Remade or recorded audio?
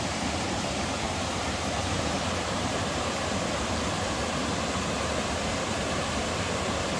remade